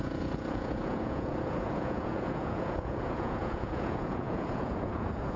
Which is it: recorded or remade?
remade